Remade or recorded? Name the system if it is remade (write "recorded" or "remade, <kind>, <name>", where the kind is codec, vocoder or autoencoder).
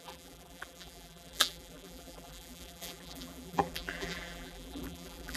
remade, vocoder, BigVGAN v2